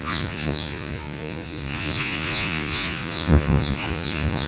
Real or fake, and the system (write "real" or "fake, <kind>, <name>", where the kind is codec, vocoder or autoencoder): fake, vocoder, Vocos